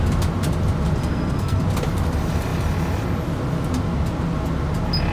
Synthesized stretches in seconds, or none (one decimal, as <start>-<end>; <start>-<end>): 1.0-1.6